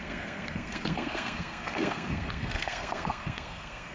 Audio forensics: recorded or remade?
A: remade